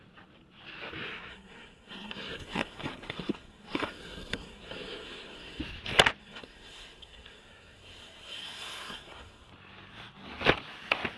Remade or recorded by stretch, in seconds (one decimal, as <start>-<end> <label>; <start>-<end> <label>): 0.0-1.3 recorded; 1.3-5.6 remade; 5.6-6.2 recorded; 6.2-9.5 remade; 9.5-11.2 recorded